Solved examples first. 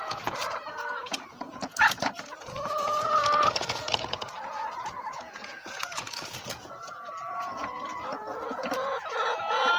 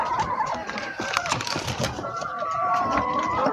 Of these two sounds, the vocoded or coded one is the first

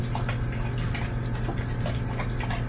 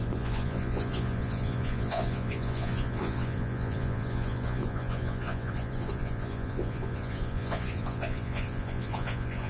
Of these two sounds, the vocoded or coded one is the second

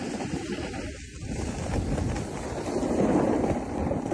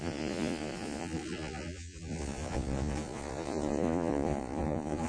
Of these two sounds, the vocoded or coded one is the second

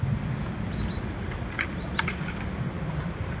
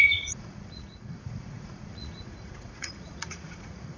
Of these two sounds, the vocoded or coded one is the second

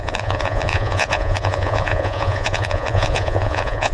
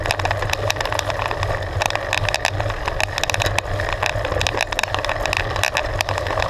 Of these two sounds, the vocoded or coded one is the first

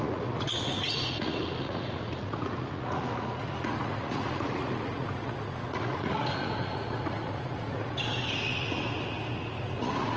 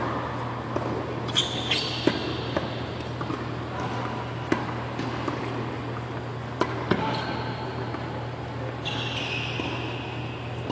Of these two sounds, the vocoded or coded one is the first